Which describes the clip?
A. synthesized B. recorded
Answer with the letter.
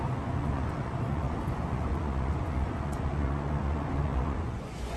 A